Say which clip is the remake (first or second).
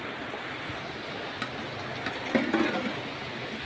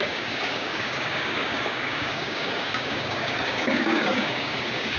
second